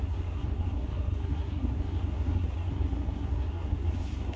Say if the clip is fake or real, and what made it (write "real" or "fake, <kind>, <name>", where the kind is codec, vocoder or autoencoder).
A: fake, codec, SNAC